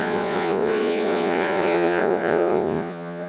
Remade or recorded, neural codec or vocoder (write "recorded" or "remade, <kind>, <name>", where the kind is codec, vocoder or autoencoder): remade, vocoder, Vocos